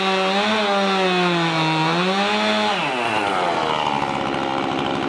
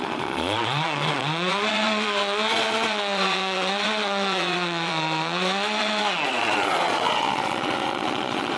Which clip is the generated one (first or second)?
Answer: second